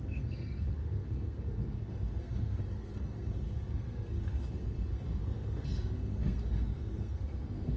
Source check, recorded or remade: remade